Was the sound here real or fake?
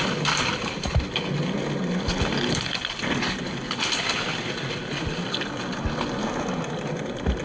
real